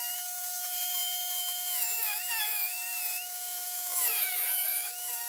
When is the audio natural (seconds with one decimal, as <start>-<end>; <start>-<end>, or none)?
none